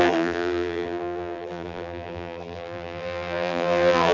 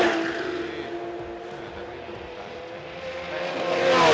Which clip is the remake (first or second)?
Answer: first